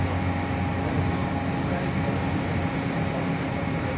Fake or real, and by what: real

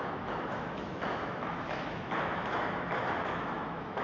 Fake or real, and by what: fake, autoencoder, DAC-VAE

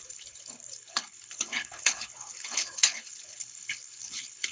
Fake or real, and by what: fake, codec, HILCodec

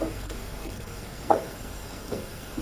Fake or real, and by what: fake, codec, SNAC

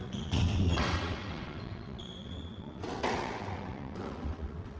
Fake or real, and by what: fake, vocoder, WaveNeXt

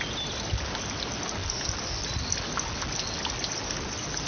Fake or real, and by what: real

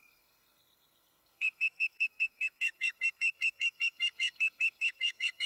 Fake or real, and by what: fake, codec, SNAC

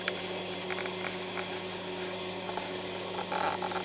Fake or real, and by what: real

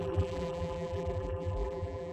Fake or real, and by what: fake, vocoder, BigVGAN v2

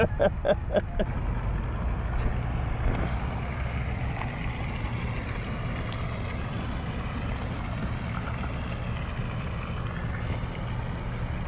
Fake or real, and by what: real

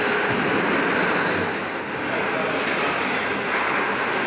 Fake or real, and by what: real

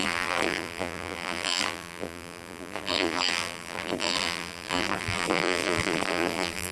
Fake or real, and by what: fake, vocoder, BigVGAN v2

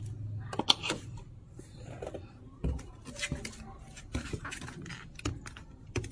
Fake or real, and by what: real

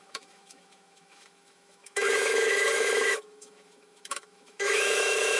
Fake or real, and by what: fake, autoencoder, DAC-VAE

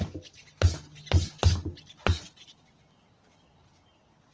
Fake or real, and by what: real